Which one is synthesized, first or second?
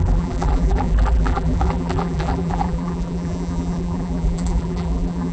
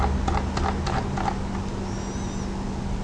first